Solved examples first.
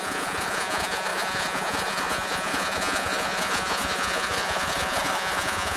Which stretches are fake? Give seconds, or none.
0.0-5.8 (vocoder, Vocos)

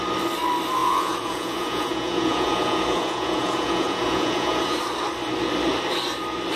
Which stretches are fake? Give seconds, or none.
0.8-4.8 (vocoder, Vocos)

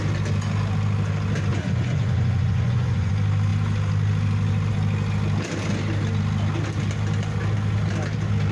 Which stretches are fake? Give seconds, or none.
1.5-3.1 (vocoder, Vocos)

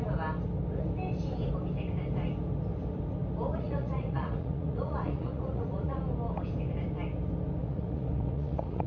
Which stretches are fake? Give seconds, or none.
3.5-6.0 (vocoder, Vocos); 7.6-8.9